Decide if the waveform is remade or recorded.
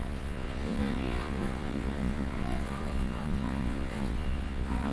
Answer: remade